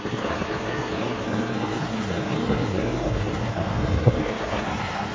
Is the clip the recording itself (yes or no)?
no